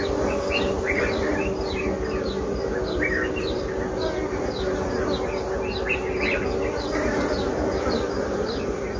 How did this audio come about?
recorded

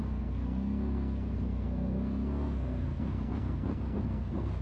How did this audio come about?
remade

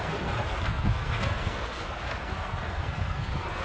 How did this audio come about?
remade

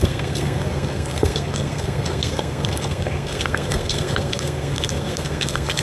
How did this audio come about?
remade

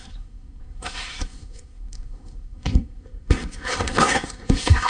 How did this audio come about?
remade